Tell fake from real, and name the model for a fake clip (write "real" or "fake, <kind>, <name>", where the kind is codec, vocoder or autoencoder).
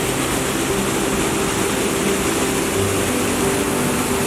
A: real